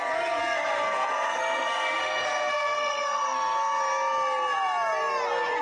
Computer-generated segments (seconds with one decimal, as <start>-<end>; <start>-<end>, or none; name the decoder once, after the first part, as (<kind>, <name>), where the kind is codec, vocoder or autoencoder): 0.4-3.8 (codec, SNAC)